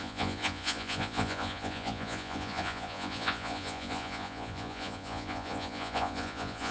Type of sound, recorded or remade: remade